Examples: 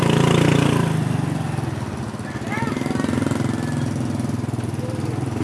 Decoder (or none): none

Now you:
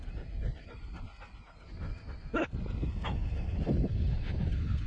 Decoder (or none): none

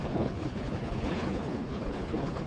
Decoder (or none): codec, HILCodec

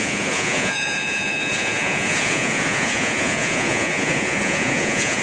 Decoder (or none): vocoder, Vocos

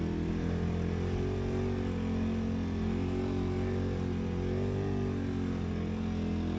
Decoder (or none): none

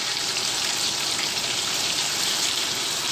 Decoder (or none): vocoder, BigVGAN v2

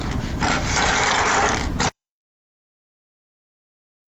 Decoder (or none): vocoder, BigVGAN v2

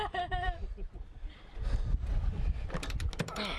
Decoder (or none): none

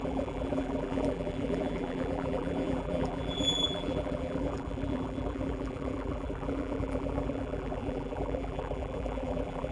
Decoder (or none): vocoder, BigVGAN v2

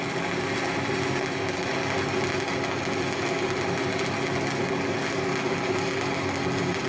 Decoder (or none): none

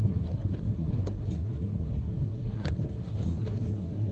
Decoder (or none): codec, SNAC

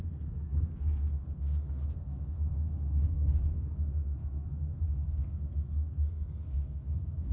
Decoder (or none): codec, SNAC